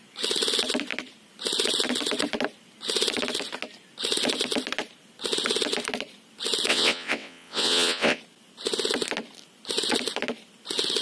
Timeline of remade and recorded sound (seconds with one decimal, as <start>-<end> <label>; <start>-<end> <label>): 0.0-6.7 recorded; 6.7-8.2 remade; 8.2-11.0 recorded